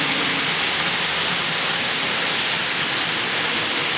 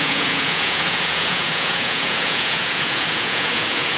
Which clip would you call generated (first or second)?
second